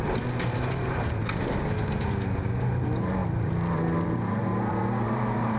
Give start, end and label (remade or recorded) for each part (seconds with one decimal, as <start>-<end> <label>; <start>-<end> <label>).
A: 0.0-1.2 remade; 1.2-2.6 recorded; 2.6-5.6 remade